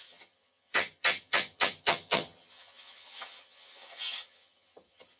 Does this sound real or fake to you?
fake